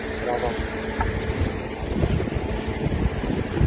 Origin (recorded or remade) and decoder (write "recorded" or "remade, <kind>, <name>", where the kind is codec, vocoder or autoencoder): recorded